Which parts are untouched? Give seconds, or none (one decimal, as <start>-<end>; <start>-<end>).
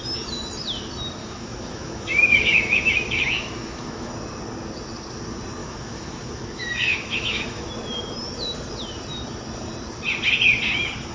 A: 0.0-1.2; 4.1-5.6; 7.7-11.1